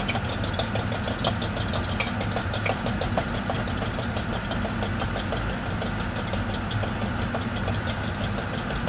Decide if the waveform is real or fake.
real